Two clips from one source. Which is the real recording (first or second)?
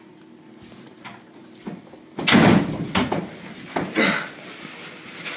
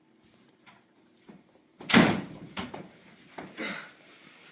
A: first